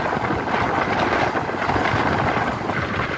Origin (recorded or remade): recorded